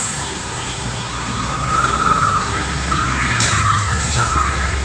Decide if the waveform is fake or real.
fake